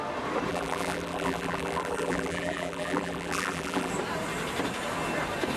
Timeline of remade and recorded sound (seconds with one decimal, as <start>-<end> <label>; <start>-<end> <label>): 0.0-0.5 recorded; 0.5-3.9 remade; 3.9-5.6 recorded